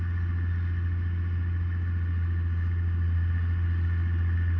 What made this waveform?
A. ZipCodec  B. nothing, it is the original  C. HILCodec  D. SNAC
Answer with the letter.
B